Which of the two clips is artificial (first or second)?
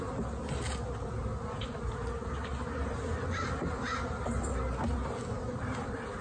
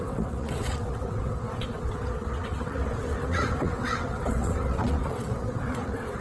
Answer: second